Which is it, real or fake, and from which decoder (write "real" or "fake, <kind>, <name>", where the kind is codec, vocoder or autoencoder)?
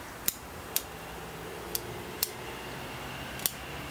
real